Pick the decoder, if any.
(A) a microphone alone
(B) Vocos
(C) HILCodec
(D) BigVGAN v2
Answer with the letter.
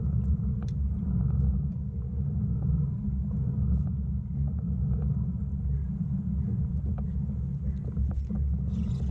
A